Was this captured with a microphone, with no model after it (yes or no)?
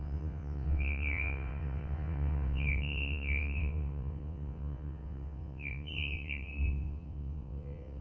no